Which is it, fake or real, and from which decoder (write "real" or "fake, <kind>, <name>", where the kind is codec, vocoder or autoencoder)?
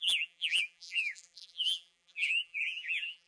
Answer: fake, vocoder, BigVGAN v2